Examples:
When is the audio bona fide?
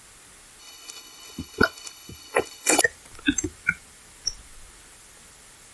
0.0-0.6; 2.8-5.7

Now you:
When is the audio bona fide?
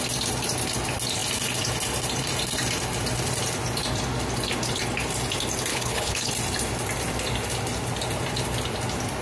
0.0-5.7; 6.3-9.2